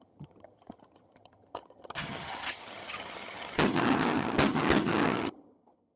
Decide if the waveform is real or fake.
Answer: fake